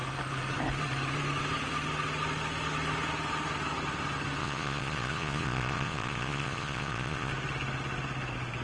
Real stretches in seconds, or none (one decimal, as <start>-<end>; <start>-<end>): 0.0-4.4; 7.3-8.6